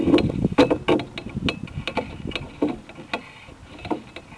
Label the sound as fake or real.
real